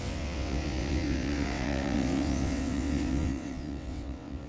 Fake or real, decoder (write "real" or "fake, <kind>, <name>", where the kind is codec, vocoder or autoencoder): fake, vocoder, WaveNeXt